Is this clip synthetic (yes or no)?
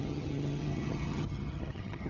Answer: yes